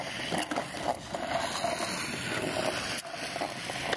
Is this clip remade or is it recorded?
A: recorded